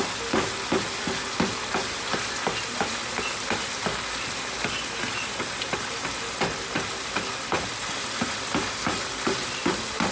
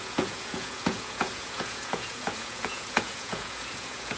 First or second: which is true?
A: first